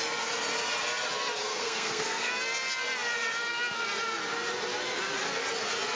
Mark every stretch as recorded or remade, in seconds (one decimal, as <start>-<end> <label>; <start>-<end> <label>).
0.0-1.4 recorded; 1.4-2.3 remade; 2.3-6.0 recorded